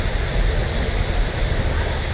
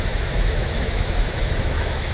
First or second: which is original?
first